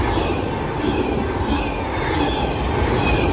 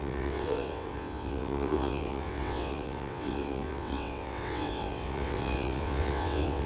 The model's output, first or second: second